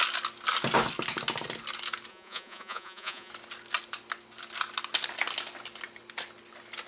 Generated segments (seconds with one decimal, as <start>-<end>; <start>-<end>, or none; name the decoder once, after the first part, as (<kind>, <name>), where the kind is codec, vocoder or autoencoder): 2.1-3.3 (vocoder, Vocos)